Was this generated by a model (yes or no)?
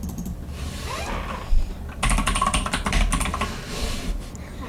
no